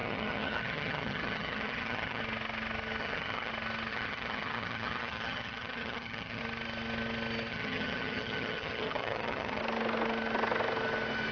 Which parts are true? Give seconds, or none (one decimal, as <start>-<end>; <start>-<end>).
2.2-3.0; 3.5-3.9; 6.4-7.5; 9.6-11.3